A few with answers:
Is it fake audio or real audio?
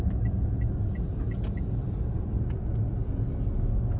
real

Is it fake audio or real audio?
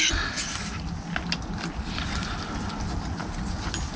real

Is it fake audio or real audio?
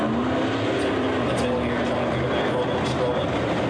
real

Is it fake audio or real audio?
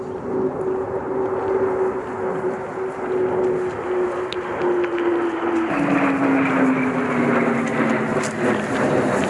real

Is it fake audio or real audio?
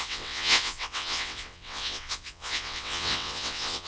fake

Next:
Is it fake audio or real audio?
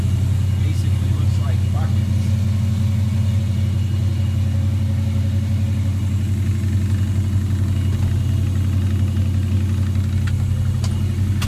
real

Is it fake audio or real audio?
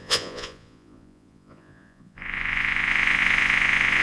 fake